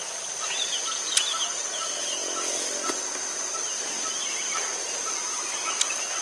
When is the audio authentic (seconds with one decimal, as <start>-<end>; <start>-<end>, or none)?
0.0-6.2